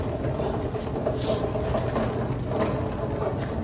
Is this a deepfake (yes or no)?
no